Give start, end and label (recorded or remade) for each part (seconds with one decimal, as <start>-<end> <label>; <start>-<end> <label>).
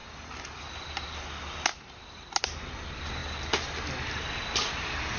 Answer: 0.0-5.2 recorded